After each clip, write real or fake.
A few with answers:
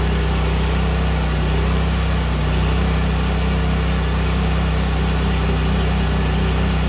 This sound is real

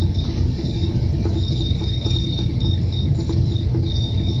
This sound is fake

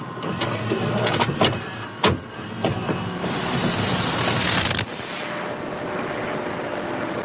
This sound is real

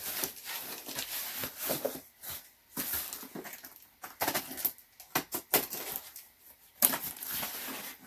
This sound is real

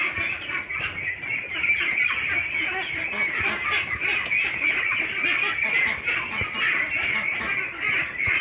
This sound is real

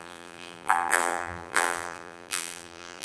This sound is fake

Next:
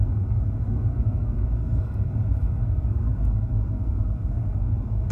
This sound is fake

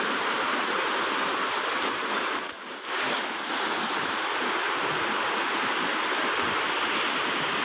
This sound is real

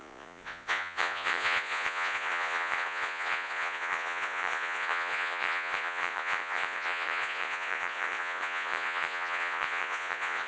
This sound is fake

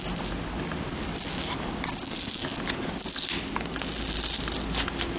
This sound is real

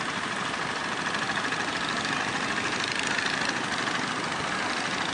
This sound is real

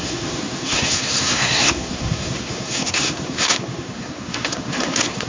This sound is fake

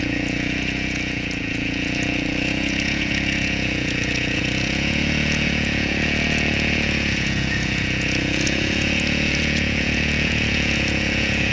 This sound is fake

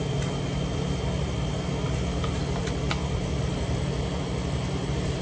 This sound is real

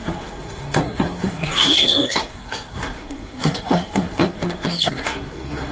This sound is fake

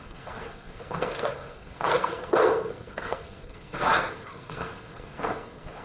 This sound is fake